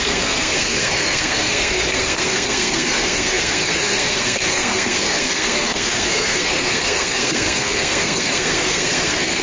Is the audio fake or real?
fake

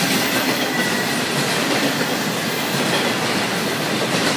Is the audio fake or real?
real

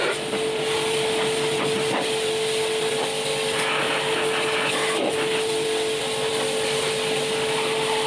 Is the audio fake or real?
real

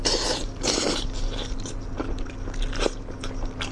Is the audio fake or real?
real